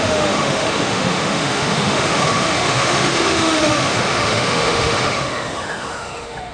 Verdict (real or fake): fake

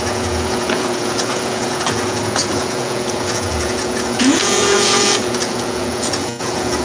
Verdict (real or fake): fake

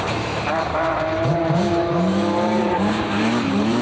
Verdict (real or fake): fake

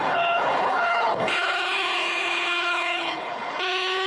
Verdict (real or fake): fake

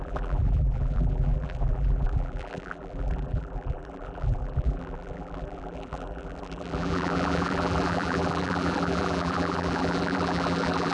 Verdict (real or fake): fake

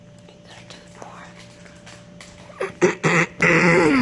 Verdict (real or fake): real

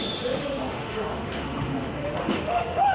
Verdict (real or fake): fake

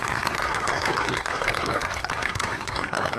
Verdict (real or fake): fake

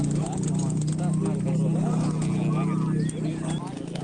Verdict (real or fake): real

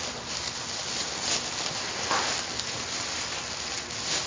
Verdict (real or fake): real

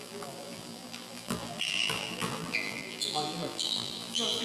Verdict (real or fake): fake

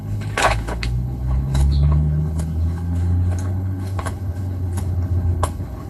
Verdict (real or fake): fake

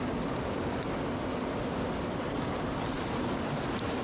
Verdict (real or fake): real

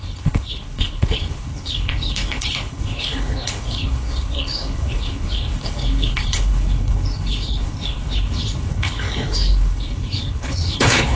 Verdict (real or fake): fake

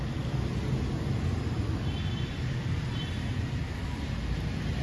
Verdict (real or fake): real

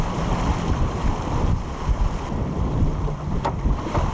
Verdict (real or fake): fake